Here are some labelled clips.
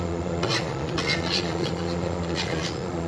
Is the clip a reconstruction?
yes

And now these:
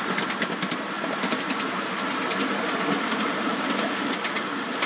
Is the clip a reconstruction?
no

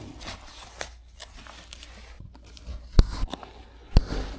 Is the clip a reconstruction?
no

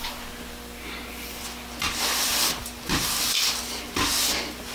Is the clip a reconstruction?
no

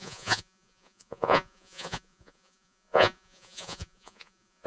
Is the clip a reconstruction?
yes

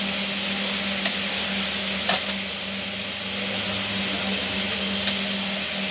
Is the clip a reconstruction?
no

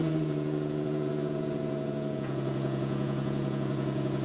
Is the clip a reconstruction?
yes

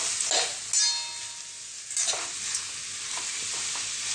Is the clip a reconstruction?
no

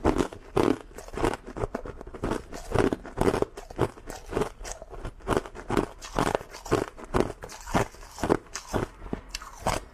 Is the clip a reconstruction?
no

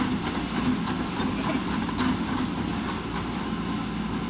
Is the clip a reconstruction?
no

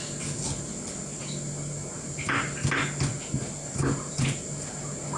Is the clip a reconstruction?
no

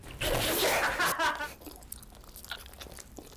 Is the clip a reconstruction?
no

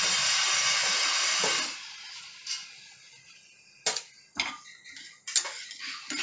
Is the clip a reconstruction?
no